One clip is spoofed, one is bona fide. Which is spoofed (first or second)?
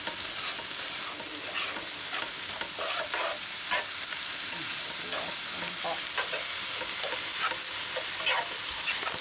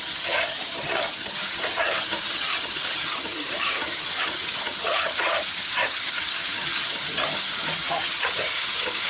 second